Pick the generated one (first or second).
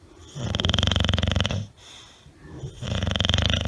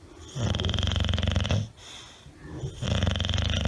first